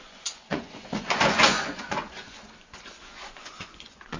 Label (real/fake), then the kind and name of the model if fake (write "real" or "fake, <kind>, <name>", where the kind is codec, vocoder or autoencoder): fake, vocoder, Vocos